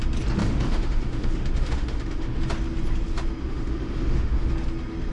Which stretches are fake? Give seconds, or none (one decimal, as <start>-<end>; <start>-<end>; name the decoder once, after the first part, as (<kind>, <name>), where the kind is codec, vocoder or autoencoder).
0.4-2.4 (autoencoder, DAC-VAE); 3.4-4.5